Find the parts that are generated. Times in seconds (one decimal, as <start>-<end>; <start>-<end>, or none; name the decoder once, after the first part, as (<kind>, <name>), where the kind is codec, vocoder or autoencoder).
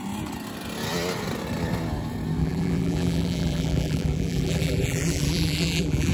2.4-6.1 (vocoder, BigVGAN v2)